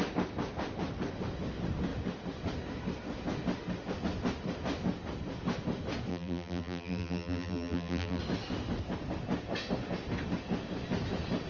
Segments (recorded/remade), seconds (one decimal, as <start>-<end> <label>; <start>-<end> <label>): 0.0-6.1 recorded; 6.1-8.2 remade; 8.2-11.5 recorded